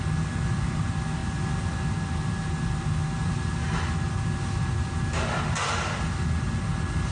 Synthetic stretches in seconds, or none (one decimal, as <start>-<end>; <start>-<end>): none